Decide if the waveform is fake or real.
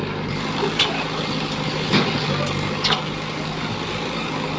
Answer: fake